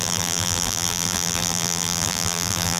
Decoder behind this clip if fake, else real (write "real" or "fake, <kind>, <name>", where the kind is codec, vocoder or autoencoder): fake, vocoder, BigVGAN v2